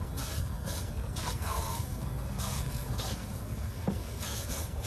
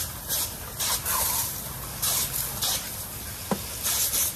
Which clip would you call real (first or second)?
second